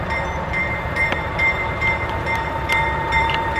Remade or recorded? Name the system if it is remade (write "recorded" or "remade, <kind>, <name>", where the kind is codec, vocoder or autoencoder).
remade, vocoder, BigVGAN v2